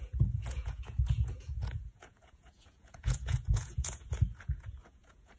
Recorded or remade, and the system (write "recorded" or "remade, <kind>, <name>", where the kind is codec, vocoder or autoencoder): remade, vocoder, Vocos